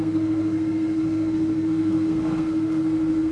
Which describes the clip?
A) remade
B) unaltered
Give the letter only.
A